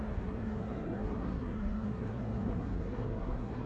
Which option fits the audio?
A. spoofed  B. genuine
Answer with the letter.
A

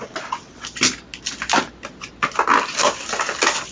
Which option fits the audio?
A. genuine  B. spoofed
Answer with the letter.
A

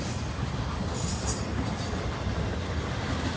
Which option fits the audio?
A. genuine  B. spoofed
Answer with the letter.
A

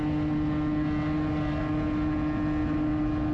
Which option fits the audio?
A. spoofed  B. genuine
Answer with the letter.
B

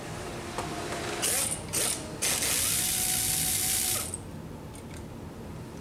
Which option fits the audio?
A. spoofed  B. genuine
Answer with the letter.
B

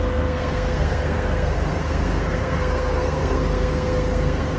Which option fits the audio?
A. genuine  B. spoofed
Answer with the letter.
B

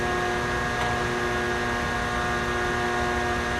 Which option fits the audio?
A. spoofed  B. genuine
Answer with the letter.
B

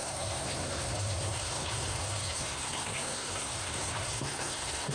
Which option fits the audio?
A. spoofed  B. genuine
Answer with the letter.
A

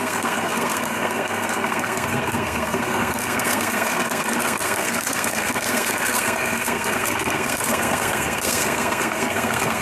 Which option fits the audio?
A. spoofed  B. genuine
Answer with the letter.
A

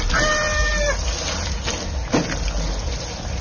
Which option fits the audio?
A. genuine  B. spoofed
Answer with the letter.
A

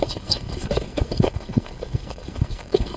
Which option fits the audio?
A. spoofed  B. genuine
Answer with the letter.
A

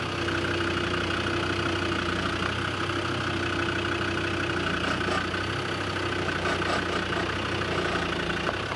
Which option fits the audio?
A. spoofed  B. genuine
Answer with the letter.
B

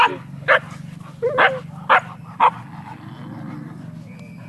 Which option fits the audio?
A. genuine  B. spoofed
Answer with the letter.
A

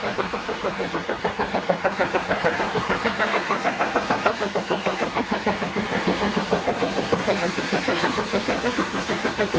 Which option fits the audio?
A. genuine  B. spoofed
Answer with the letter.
B